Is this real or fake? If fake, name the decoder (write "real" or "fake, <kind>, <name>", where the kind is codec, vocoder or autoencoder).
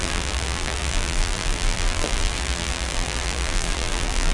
fake, vocoder, BigVGAN v2